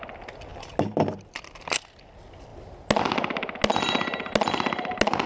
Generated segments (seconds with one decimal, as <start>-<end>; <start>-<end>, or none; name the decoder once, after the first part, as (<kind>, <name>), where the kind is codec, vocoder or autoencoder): none

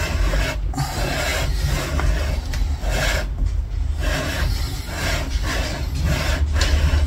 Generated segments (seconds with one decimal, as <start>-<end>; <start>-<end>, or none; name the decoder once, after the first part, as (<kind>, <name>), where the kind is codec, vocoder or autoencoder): 4.0-4.6 (vocoder, BigVGAN v2)

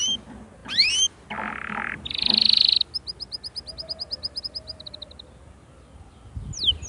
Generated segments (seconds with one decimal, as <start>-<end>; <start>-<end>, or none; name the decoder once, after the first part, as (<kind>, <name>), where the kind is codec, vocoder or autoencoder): none

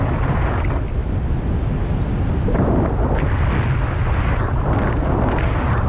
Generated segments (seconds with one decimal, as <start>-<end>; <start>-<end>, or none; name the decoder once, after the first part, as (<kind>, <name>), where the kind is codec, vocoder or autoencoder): none

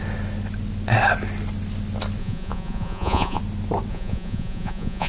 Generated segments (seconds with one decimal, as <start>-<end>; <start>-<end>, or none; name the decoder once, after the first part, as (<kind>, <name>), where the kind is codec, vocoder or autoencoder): 2.2-3.4 (vocoder, Vocos); 3.9-5.1

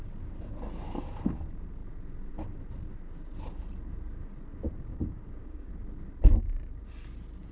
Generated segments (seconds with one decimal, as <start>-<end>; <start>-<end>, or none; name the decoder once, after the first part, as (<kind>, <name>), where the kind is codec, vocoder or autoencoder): 4.9-5.7 (codec, DAC)

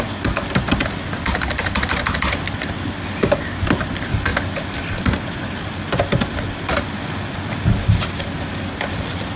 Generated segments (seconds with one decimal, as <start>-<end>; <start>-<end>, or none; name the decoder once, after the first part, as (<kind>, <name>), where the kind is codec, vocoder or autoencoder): none

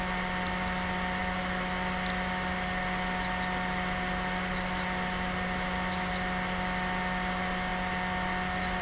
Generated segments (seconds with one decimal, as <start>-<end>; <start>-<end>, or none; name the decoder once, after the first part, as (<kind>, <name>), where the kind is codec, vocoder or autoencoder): none